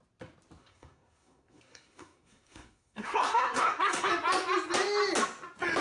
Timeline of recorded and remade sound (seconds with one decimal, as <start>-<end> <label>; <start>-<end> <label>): 0.0-0.6 recorded; 0.6-4.1 remade; 4.1-5.8 recorded